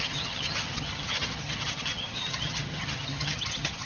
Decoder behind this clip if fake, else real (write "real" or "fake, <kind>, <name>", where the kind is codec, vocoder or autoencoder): fake, vocoder, HiFi-GAN